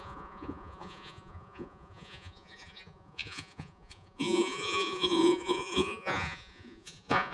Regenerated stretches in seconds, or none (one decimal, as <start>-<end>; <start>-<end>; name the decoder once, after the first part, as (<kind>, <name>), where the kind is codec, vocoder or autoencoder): 0.0-7.3 (vocoder, Vocos)